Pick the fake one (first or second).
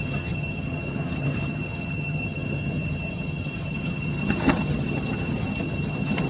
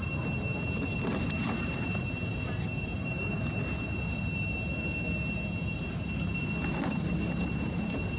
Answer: first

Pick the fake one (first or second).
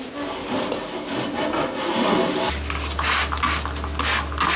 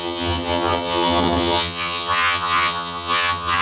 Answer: second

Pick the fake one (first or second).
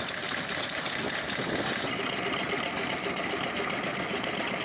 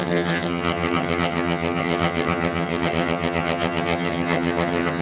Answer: second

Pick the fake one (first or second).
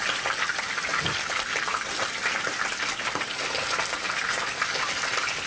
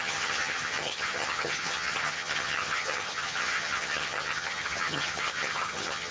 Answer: second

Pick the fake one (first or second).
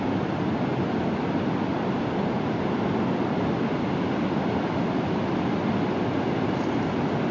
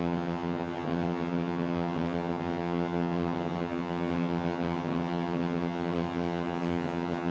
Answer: second